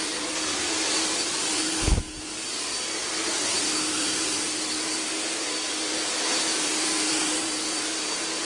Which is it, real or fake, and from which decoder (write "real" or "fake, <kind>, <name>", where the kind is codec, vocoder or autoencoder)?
real